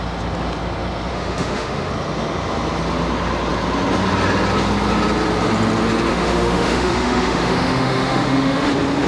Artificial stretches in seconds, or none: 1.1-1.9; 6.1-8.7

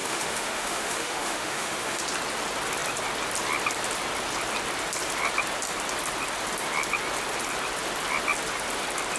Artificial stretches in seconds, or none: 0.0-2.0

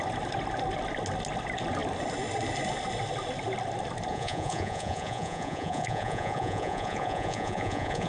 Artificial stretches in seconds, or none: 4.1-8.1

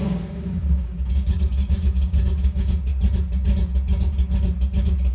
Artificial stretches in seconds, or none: 0.0-2.9

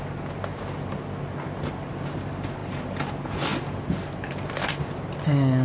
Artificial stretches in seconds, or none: 2.6-3.1

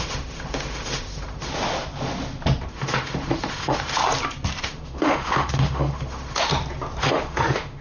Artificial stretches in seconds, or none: 0.0-1.5; 2.7-4.0; 4.6-6.5; 7.0-7.8